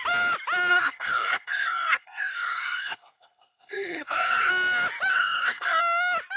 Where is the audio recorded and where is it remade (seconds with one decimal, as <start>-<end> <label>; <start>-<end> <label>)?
0.0-0.7 recorded; 0.7-4.5 remade; 4.5-5.1 recorded; 5.1-5.8 remade; 5.8-6.4 recorded